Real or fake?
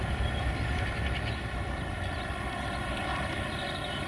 real